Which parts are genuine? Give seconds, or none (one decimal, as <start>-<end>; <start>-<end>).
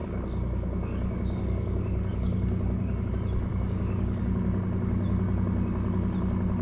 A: 3.1-3.5; 4.2-6.6